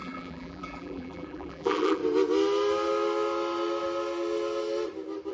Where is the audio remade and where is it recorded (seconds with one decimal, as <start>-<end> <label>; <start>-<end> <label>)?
0.0-2.0 remade; 2.0-5.3 recorded